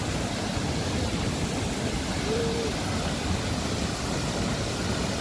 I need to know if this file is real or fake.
fake